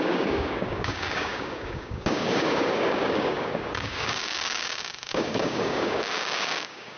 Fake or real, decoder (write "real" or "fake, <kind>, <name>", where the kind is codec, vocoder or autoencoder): fake, codec, DAC